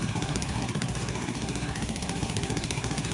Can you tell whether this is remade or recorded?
remade